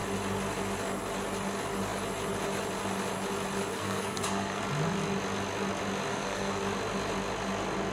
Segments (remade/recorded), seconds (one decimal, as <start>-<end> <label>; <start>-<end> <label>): 0.0-3.7 recorded; 3.7-4.6 remade; 4.6-6.1 recorded; 6.1-6.6 remade; 6.6-7.9 recorded